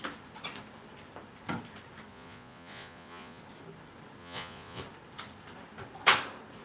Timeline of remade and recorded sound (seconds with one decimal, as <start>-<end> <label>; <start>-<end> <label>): 0.0-2.1 recorded; 2.1-3.4 remade; 3.4-4.2 recorded; 4.2-4.8 remade; 4.8-6.6 recorded